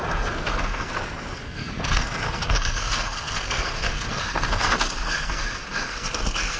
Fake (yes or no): yes